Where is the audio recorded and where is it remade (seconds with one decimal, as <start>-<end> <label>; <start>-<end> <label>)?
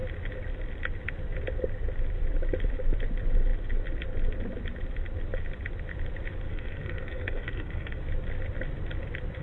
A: 0.0-6.5 recorded; 6.5-8.0 remade; 8.0-9.4 recorded